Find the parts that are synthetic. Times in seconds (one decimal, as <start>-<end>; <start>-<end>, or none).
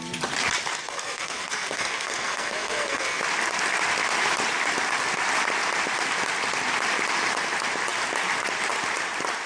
0.8-3.2